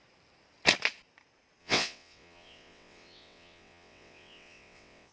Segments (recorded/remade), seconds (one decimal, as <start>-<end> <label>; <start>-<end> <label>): 0.0-1.6 recorded; 1.6-5.1 remade